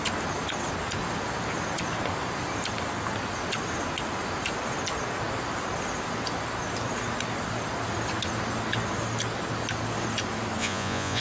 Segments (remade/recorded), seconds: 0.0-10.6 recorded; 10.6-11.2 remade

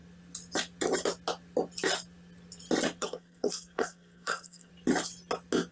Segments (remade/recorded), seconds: 0.0-3.0 recorded; 3.0-4.7 remade; 4.7-5.7 recorded

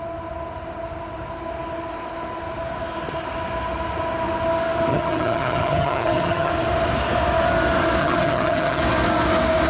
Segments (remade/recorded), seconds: 0.0-4.9 recorded; 4.9-6.5 remade; 6.5-8.0 recorded; 8.0-8.8 remade; 8.8-9.7 recorded

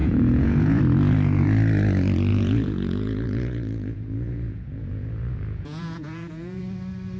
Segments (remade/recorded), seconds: 0.0-0.8 remade; 0.8-2.3 recorded; 2.3-6.6 remade; 6.6-7.2 recorded

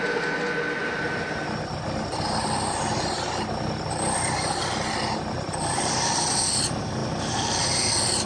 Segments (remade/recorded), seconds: 0.0-8.3 recorded

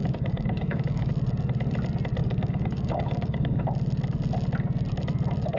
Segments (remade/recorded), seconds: 0.0-1.1 remade; 1.1-2.2 recorded; 2.2-3.6 remade; 3.6-5.6 recorded

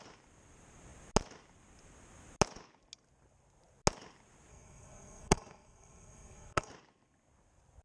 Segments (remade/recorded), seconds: 0.0-4.5 recorded; 4.5-6.7 remade; 6.7-7.8 recorded

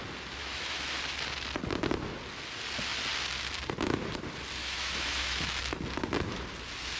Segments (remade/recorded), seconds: 0.0-0.4 recorded; 0.4-1.0 remade; 1.0-4.6 recorded; 4.6-5.6 remade; 5.6-7.0 recorded